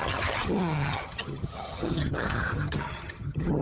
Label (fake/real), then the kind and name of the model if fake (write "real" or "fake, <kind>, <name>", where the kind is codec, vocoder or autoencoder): fake, vocoder, HiFi-GAN